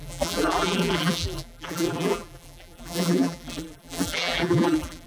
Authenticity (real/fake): fake